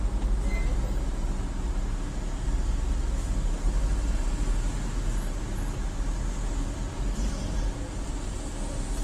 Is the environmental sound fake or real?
real